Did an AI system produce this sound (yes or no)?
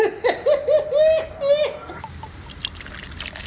no